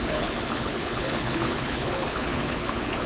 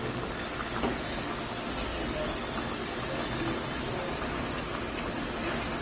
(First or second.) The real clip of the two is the second